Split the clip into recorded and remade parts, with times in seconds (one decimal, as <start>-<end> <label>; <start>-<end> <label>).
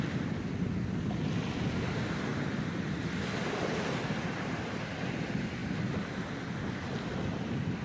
0.0-7.8 recorded